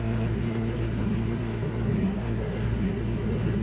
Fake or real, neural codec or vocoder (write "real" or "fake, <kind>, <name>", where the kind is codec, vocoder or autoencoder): fake, codec, SNAC